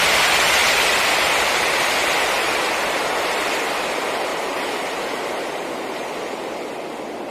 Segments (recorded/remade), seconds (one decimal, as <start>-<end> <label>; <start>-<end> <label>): 0.0-7.3 recorded